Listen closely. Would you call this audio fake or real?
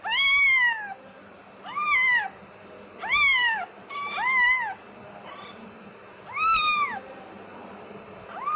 real